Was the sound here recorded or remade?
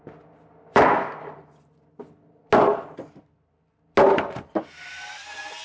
recorded